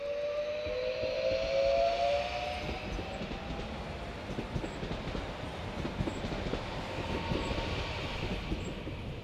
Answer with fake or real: real